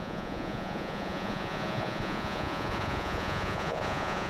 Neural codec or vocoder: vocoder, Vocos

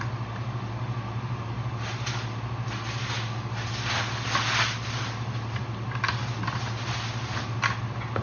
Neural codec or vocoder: none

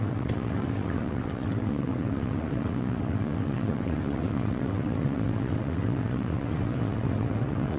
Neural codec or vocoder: vocoder, WaveNeXt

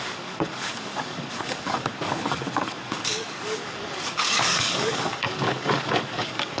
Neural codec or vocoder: codec, DAC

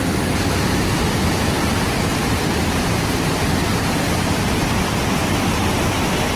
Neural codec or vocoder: none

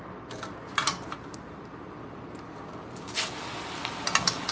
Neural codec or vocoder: none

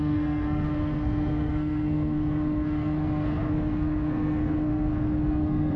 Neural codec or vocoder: codec, SNAC